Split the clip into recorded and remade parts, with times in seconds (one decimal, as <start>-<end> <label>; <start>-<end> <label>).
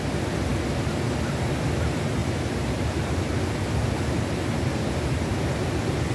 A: 0.0-6.1 recorded